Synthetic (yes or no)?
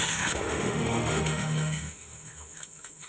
yes